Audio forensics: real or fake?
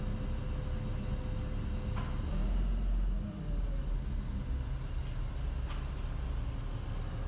real